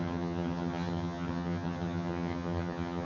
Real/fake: fake